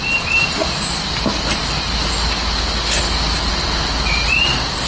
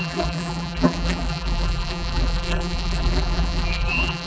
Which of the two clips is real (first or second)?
first